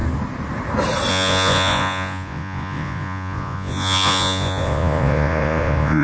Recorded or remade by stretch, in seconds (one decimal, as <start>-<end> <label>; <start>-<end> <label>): 0.0-1.1 recorded; 1.1-6.0 remade